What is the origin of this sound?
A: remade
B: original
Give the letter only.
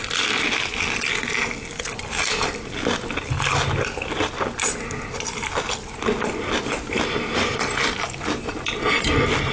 B